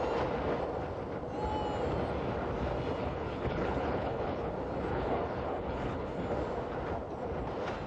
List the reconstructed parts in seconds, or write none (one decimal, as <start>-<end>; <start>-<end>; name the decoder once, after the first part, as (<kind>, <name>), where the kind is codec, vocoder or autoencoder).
3.0-4.5 (codec, HILCodec); 4.9-6.2